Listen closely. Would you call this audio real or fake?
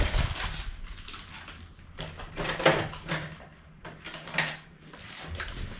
real